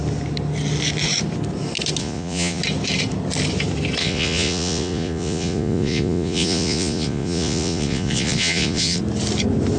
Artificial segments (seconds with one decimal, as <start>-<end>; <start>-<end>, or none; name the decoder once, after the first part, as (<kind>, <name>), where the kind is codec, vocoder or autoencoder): 2.0-2.6 (vocoder, Vocos); 4.0-9.0

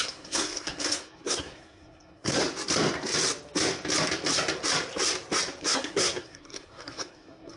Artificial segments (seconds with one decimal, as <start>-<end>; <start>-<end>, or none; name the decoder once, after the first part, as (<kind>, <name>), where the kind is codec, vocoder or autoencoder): 0.0-2.4 (codec, SNAC); 5.6-7.6

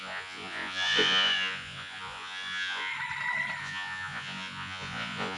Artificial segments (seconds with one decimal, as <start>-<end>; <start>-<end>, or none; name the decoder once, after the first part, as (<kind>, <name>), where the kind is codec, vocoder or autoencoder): 0.0-2.9 (vocoder, Vocos); 3.6-5.4

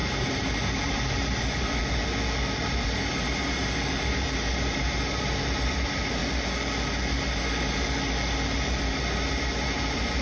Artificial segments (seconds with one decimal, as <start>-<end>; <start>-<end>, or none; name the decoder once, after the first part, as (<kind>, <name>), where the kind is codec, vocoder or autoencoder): 0.0-1.8 (vocoder, BigVGAN v2); 2.6-6.2; 8.8-10.2

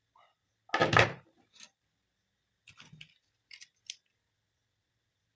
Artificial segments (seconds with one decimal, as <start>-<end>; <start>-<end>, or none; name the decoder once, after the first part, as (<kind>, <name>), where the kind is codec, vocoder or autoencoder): none

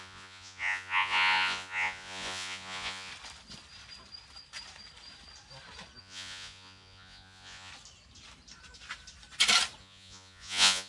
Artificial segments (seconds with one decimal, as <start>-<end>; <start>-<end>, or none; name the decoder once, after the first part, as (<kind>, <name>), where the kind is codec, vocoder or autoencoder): 0.0-3.1 (vocoder, Vocos); 6.0-7.7; 9.8-10.9

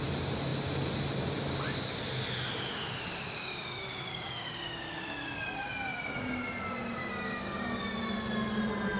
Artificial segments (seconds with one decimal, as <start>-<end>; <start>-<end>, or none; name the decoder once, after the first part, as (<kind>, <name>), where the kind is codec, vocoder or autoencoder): 3.4-5.7 (codec, DAC); 7.0-7.8